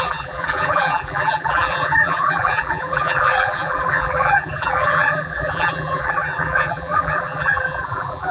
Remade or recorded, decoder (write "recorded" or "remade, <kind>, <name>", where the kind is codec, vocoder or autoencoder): remade, vocoder, BigVGAN v2